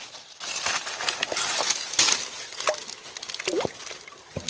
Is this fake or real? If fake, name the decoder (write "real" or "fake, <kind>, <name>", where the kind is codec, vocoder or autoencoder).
real